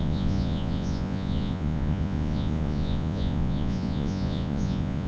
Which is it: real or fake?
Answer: fake